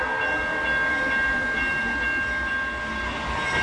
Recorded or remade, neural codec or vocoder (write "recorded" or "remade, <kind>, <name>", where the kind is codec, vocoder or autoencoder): recorded